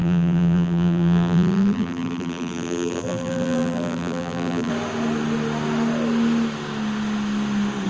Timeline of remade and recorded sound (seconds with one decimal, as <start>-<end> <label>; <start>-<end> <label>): 0.0-4.7 remade; 4.7-7.9 recorded